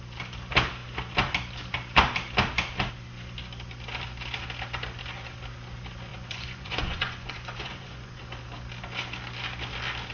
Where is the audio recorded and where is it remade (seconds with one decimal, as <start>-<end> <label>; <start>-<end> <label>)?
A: 0.0-6.1 recorded; 6.1-8.2 remade; 8.2-10.1 recorded